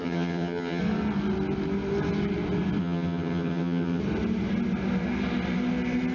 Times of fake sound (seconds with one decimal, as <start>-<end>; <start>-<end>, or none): 0.0-0.8; 2.8-4.0